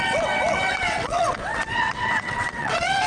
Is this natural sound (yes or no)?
no